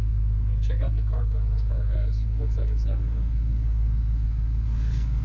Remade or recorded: remade